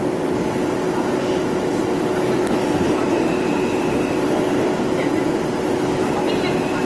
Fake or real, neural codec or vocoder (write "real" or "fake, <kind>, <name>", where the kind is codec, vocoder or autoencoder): real